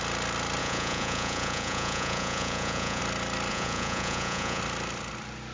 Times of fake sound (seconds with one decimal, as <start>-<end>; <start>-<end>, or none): 0.6-3.0; 3.5-4.6